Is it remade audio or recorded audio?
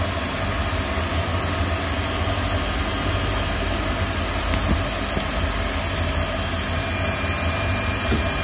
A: recorded